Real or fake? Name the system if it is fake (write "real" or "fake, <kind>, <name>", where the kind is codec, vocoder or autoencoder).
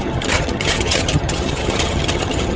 fake, vocoder, HiFi-GAN